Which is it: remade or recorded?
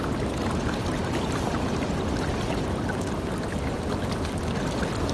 recorded